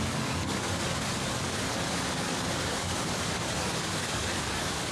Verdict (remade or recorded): remade